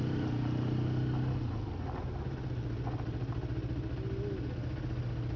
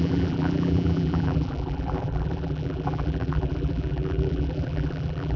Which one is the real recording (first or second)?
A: first